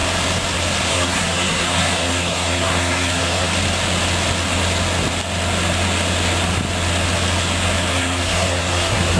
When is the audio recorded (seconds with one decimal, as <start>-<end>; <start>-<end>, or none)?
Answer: 0.0-0.9; 3.5-7.9